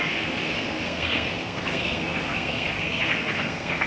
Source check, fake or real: fake